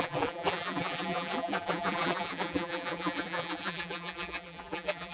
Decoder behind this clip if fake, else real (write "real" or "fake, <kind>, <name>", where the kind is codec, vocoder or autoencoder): fake, vocoder, BigVGAN v2